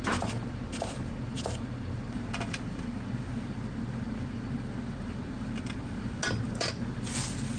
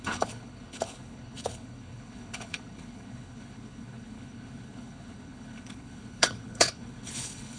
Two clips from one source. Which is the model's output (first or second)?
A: second